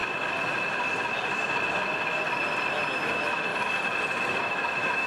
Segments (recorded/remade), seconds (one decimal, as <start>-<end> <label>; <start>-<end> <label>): 0.0-3.1 recorded; 3.1-3.5 remade; 3.5-4.4 recorded; 4.4-5.1 remade